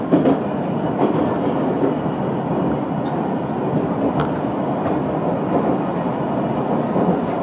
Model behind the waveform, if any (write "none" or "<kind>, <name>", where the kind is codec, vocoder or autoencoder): none